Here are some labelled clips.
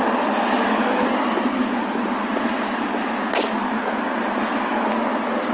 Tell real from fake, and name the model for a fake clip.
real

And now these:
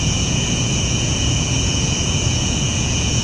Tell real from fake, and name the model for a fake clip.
fake, vocoder, Vocos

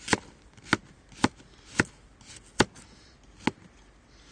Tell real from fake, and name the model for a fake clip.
real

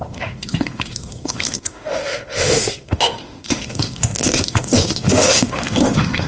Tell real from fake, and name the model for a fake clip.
fake, autoencoder, DAC-VAE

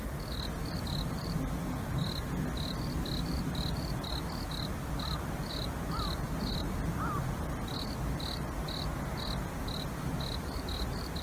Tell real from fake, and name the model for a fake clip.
real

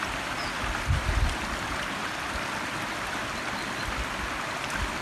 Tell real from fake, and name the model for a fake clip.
real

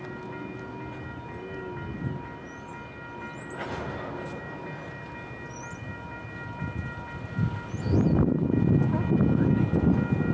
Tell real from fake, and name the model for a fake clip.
real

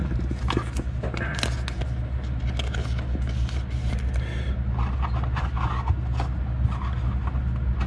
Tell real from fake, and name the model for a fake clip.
real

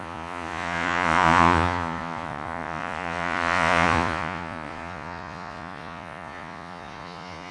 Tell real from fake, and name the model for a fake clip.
fake, vocoder, Vocos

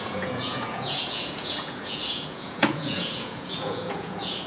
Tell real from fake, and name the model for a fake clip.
fake, vocoder, Vocos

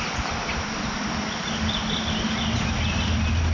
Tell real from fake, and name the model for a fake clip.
real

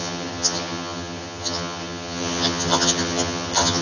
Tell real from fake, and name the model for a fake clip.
fake, vocoder, HiFi-GAN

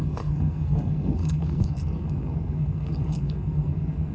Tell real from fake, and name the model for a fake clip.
fake, codec, SNAC